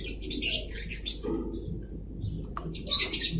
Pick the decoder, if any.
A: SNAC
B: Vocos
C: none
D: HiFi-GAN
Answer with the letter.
C